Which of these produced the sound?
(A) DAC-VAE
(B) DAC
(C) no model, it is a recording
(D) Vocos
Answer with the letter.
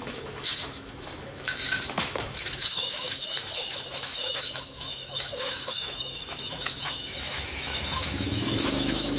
A